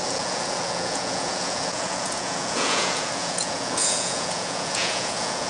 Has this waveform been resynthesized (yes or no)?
yes